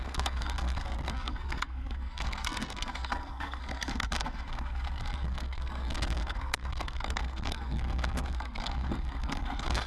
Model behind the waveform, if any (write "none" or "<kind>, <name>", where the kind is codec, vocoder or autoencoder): codec, SNAC